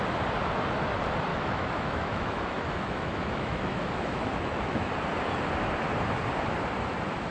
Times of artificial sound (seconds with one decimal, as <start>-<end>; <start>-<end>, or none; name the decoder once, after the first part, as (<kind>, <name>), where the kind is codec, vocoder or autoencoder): 1.3-4.9 (autoencoder, DAC-VAE)